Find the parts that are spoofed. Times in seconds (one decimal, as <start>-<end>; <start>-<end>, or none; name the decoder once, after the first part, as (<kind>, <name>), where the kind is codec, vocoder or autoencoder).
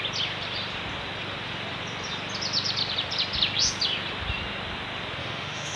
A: 5.2-5.8 (autoencoder, DAC-VAE)